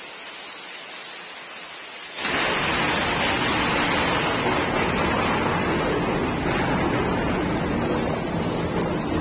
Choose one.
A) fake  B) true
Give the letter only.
B